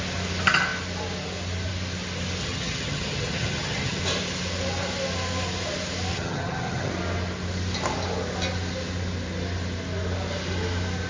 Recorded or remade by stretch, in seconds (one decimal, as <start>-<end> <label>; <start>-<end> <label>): 0.0-2.4 recorded; 2.4-4.0 remade; 4.0-6.1 recorded; 6.1-6.9 remade; 6.9-11.1 recorded